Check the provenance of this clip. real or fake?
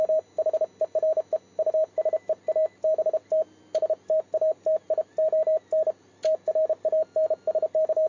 real